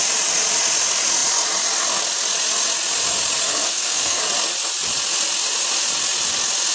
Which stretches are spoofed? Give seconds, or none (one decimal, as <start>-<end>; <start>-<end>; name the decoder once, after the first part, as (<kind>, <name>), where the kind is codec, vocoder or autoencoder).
3.5-4.2 (codec, SNAC)